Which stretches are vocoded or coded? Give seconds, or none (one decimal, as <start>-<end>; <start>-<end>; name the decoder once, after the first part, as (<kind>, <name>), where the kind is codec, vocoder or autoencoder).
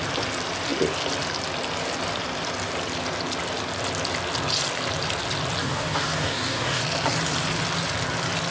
5.6-6.8 (codec, DAC)